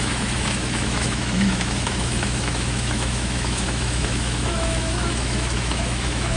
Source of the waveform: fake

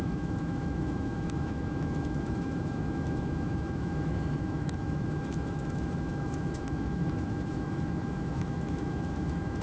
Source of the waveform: fake